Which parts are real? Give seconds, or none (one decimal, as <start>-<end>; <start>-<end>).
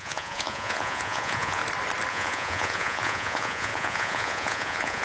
1.6-2.1